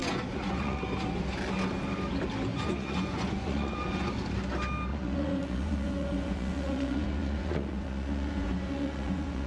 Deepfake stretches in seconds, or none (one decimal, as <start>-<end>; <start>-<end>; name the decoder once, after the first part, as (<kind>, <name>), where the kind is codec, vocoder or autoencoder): 0.0-0.8 (vocoder, Vocos); 2.5-4.1; 4.9-9.5